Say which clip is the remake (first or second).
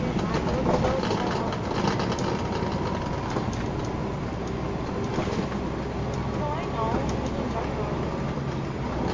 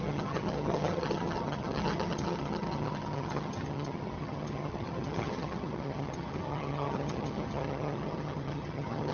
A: second